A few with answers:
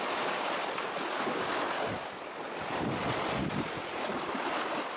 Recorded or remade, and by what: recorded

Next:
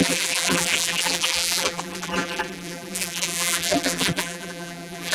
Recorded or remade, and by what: remade, vocoder, BigVGAN v2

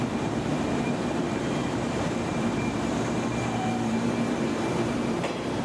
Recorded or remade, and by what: remade, vocoder, BigVGAN v2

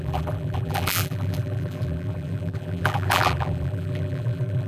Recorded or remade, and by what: remade, vocoder, BigVGAN v2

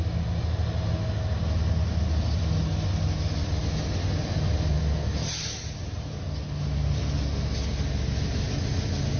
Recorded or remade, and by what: recorded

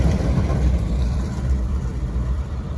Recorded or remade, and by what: remade, vocoder, BigVGAN v2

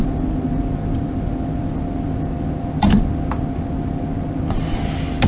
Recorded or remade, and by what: remade, vocoder, BigVGAN v2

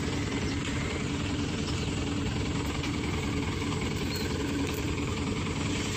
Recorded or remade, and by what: remade, vocoder, BigVGAN v2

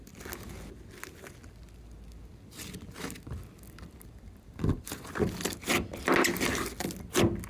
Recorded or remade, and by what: recorded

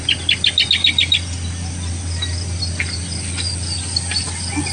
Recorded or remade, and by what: recorded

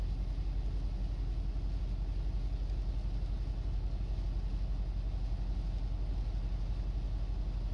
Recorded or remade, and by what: recorded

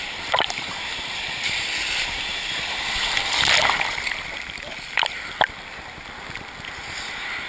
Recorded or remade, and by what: recorded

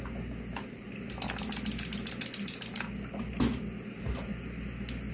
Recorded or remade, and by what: recorded